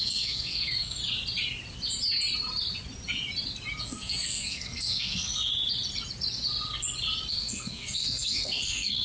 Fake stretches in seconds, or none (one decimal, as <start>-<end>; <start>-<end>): 0.0-1.0; 3.8-5.5; 7.3-9.0